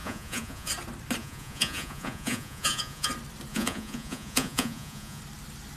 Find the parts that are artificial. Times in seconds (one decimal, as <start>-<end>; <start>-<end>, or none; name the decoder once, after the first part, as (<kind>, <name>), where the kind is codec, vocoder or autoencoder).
0.0-0.7 (vocoder, Vocos); 1.2-3.1; 3.5-5.2